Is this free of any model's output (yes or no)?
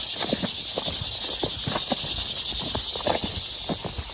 yes